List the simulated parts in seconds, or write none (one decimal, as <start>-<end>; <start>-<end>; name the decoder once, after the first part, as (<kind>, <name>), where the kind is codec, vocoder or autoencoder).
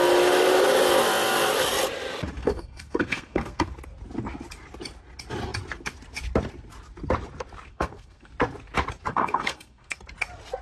2.4-3.7 (codec, SNAC); 7.7-8.3; 9.1-10.0